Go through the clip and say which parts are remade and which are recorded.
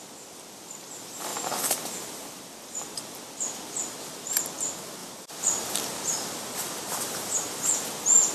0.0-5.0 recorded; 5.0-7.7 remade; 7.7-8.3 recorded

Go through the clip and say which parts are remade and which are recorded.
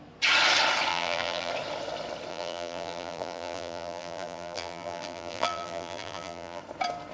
0.0-0.9 recorded; 0.9-1.5 remade; 1.5-2.3 recorded; 2.3-6.6 remade; 6.6-7.1 recorded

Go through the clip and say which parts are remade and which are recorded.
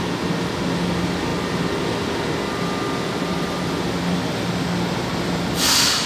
0.0-6.1 recorded